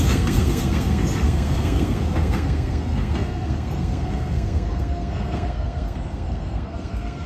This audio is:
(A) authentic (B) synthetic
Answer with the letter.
B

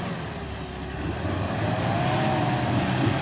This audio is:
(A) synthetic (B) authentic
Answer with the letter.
B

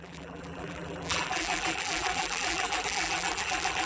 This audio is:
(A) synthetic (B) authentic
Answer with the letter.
A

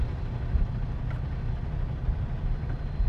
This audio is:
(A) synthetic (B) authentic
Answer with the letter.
B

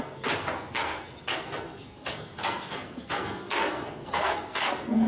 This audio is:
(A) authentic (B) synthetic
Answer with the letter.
B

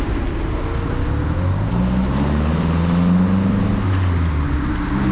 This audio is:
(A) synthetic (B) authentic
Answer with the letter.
B